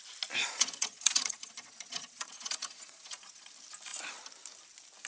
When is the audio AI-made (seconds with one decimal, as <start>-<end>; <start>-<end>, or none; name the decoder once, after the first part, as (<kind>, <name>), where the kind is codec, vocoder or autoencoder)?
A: 0.4-3.5 (vocoder, Vocos)